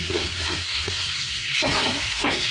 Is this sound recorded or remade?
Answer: remade